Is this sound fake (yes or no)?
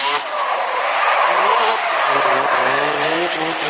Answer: yes